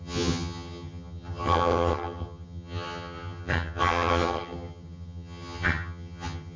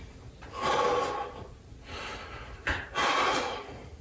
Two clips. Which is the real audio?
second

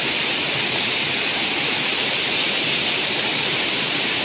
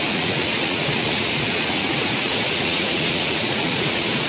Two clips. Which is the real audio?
first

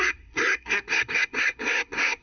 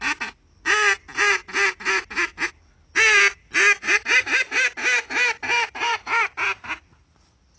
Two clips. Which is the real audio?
second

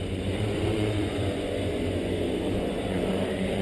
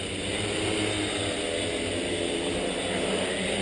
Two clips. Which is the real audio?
second